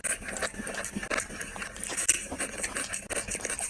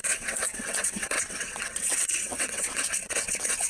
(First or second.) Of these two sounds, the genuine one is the first